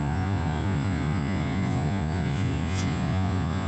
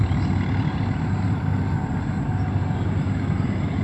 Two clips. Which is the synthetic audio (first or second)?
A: first